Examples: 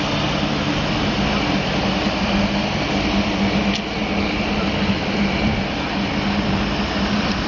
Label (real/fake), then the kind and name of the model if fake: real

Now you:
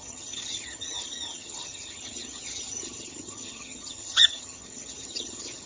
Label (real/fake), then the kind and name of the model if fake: fake, vocoder, HiFi-GAN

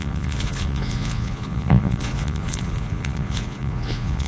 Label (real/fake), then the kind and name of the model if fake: fake, vocoder, Vocos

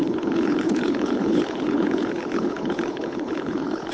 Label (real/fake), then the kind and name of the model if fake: fake, codec, HILCodec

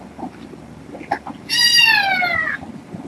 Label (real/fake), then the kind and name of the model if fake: real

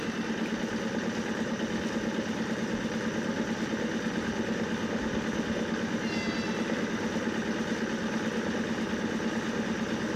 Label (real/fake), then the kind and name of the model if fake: real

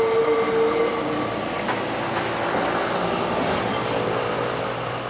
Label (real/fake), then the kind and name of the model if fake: real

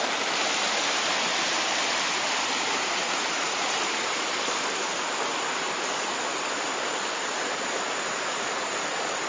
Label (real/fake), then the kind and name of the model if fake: fake, vocoder, BigVGAN v2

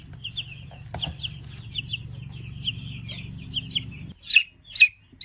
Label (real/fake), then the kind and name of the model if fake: real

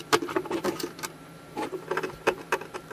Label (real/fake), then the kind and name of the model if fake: fake, vocoder, BigVGAN v2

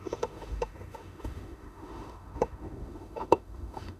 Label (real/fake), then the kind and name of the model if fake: fake, autoencoder, DAC-VAE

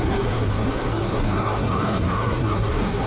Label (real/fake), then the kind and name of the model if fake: fake, codec, SNAC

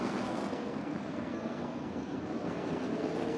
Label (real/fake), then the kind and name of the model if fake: fake, codec, SNAC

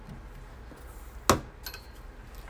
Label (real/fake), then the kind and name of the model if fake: real